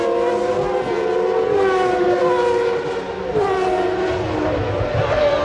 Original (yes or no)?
yes